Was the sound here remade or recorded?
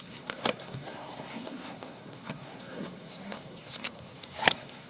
remade